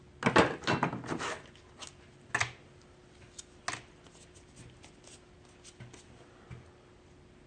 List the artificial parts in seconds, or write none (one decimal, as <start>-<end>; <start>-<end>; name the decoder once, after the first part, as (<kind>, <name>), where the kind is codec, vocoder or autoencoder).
none